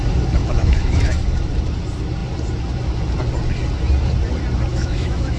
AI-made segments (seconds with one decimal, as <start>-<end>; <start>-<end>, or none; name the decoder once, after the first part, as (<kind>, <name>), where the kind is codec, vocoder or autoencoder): 0.4-1.1 (autoencoder, DAC-VAE); 4.7-5.4